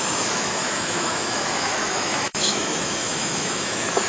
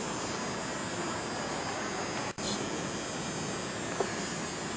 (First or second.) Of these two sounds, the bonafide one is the second